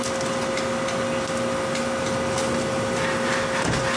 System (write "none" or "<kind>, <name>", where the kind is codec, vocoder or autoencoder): none